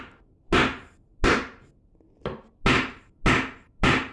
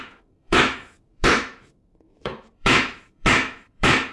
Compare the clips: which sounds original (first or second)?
first